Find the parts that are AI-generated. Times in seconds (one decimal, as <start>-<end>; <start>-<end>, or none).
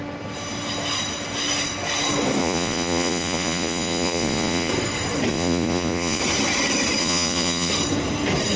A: 2.4-4.7; 5.3-6.2; 7.0-7.7